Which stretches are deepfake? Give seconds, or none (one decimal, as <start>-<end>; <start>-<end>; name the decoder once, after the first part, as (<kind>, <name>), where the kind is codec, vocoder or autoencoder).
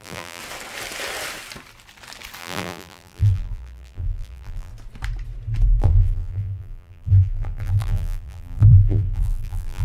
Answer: 0.0-0.4 (vocoder, BigVGAN v2); 2.4-4.7; 5.8-9.8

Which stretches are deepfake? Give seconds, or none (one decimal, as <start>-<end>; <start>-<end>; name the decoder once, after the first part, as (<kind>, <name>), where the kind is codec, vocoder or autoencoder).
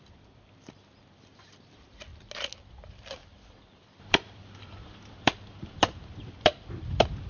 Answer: 3.2-7.3 (vocoder, BigVGAN v2)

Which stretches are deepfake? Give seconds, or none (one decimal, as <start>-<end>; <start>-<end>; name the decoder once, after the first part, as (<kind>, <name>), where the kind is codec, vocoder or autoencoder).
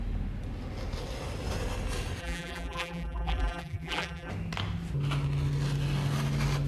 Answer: 2.2-4.3 (vocoder, BigVGAN v2)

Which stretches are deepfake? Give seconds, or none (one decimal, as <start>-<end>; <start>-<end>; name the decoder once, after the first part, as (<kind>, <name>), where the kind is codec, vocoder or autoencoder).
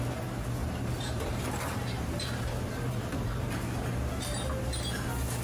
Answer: 0.6-3.8 (vocoder, BigVGAN v2)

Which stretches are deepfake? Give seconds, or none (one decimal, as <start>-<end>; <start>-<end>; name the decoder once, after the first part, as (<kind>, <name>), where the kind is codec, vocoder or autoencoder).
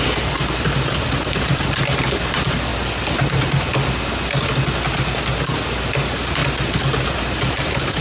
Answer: 0.0-2.7 (vocoder, BigVGAN v2); 5.8-6.4; 7.1-8.0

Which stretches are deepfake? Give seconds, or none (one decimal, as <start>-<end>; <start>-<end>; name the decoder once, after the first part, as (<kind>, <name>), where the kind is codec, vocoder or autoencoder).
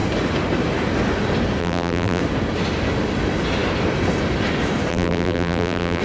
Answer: 1.6-2.2 (vocoder, BigVGAN v2); 4.9-6.0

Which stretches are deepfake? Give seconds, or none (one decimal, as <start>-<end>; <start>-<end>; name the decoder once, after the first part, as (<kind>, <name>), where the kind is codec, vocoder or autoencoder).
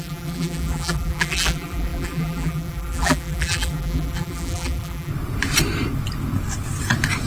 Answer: 0.0-5.1 (vocoder, BigVGAN v2)